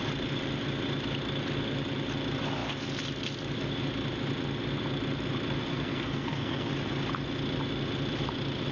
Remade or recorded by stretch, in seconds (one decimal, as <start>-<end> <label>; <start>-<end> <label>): 0.0-5.7 recorded; 5.7-6.7 remade; 6.7-8.7 recorded